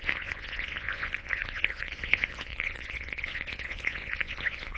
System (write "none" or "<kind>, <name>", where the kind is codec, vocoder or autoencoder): vocoder, Vocos